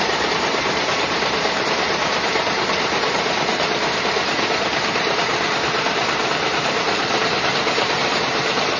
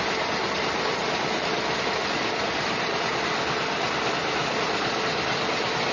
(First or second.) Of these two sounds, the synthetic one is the first